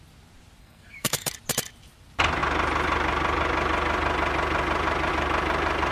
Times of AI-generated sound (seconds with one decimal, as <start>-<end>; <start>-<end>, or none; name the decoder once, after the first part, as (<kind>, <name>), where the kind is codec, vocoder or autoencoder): 0.6-1.3 (codec, SNAC)